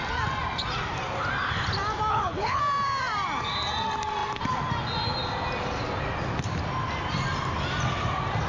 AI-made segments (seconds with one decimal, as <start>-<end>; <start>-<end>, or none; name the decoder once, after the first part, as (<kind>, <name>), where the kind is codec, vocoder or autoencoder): 2.1-2.6 (codec, HILCodec)